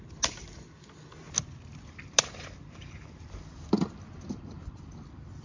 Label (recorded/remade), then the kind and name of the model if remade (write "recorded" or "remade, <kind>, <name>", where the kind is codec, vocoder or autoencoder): recorded